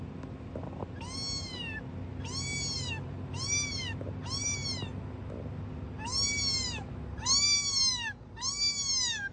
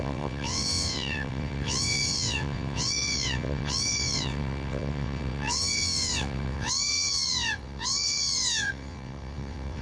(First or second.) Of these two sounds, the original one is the first